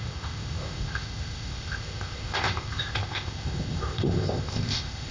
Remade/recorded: remade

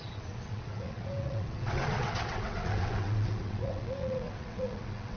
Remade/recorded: remade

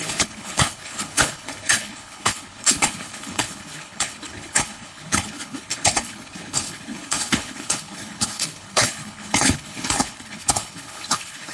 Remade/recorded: remade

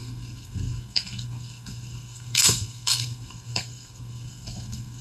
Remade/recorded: remade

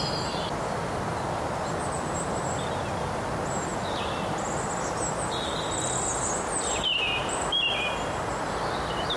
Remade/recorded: recorded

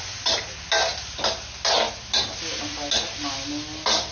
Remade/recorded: recorded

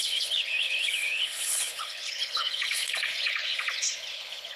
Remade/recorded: remade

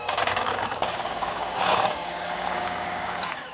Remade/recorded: remade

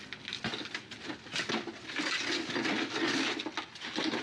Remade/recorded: recorded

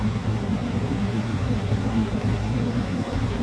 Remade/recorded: remade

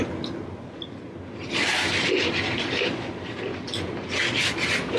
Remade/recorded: recorded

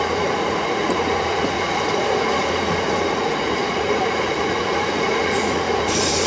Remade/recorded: remade